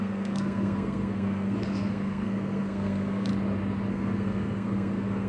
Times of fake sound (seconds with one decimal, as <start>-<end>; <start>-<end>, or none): 0.0-3.3; 3.9-5.3